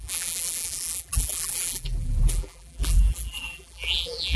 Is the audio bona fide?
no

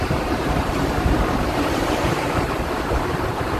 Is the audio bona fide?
no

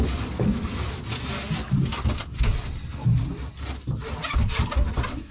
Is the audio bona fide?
yes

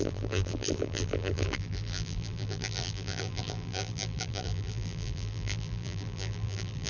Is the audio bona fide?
no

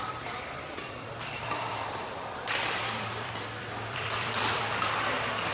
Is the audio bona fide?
no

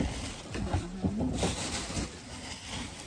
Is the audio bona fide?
yes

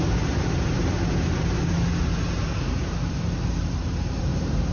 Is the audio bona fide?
no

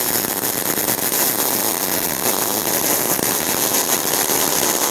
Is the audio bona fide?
no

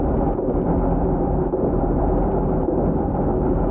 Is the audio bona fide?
no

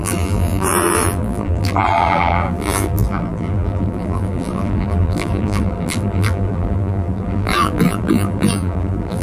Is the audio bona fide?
no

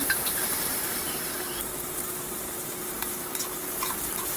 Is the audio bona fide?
no